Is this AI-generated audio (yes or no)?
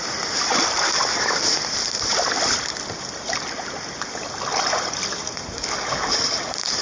no